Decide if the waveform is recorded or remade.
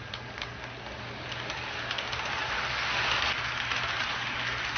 recorded